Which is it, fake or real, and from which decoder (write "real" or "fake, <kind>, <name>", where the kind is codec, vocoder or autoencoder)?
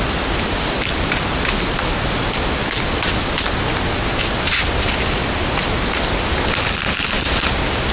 real